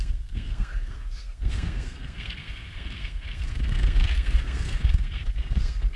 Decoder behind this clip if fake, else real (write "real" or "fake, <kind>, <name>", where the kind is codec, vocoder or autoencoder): fake, codec, SNAC